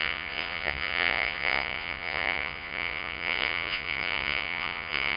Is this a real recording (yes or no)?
no